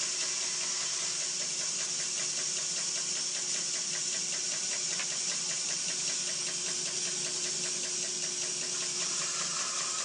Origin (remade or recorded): recorded